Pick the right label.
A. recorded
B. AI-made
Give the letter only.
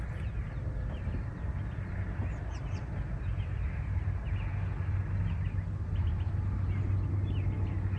A